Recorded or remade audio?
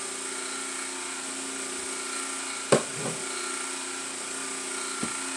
recorded